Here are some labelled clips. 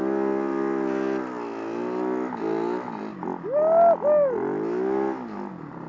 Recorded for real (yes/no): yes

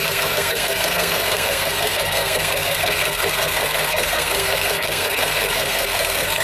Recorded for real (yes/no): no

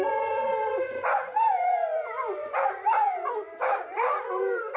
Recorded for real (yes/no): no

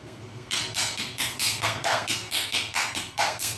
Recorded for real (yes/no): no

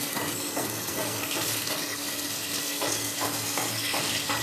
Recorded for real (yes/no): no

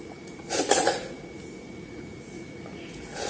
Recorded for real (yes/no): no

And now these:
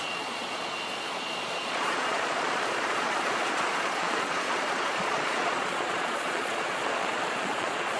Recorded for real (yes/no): no